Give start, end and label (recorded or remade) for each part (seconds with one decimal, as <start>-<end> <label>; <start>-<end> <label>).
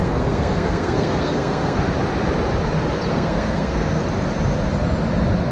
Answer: 0.0-1.8 remade; 1.8-3.1 recorded; 3.1-4.0 remade; 4.0-5.5 recorded